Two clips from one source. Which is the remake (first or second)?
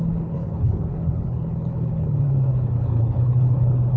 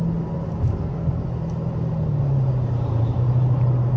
first